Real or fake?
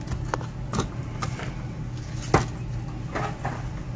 real